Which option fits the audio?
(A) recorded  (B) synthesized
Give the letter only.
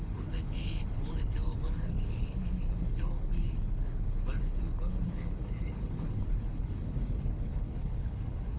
B